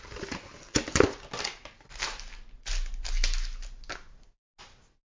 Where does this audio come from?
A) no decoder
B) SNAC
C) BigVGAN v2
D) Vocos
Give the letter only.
A